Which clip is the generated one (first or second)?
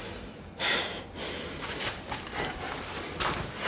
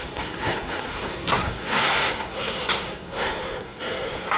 second